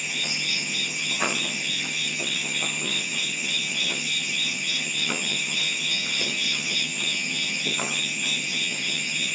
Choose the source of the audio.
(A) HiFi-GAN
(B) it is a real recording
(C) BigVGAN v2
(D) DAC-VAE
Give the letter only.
A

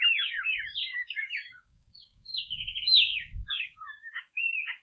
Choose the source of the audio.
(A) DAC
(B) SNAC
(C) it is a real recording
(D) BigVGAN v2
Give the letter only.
A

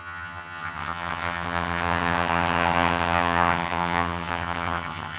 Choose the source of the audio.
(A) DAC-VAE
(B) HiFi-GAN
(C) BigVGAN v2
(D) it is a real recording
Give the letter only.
B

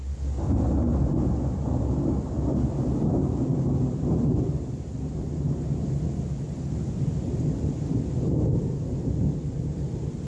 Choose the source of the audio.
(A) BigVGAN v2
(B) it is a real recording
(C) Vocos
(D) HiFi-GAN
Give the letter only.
B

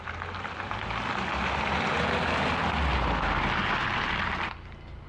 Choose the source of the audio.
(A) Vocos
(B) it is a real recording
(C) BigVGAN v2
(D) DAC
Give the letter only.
B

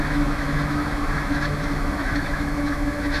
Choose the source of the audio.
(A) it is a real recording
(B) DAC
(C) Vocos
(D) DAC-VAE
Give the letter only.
D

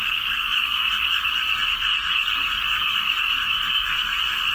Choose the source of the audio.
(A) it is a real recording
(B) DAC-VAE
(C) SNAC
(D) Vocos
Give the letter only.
C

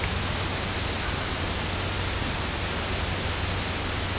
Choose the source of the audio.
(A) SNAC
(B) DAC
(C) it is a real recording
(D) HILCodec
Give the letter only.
C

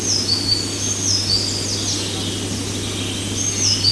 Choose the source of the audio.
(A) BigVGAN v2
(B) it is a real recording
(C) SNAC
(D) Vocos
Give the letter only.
B